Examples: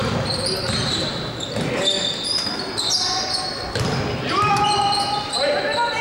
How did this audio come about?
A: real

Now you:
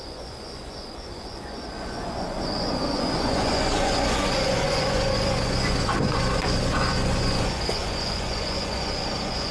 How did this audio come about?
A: fake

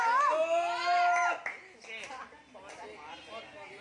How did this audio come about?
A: real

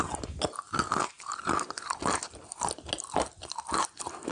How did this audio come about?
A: real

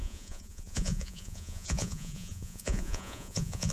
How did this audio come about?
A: fake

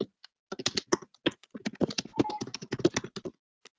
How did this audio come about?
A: real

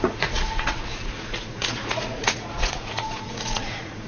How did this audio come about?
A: fake